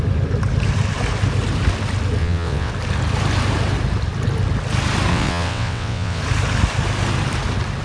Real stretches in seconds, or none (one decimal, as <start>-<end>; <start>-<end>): 0.0-2.2; 2.7-5.1; 6.2-7.8